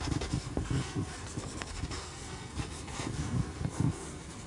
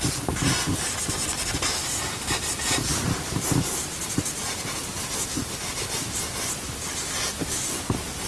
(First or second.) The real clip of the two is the second